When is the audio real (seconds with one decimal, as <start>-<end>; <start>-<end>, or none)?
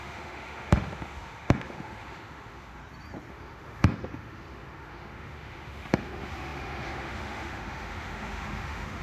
2.8-3.3